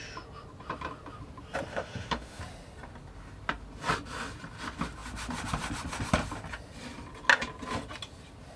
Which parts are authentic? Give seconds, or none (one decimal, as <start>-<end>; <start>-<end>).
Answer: 0.0-1.7; 2.4-8.6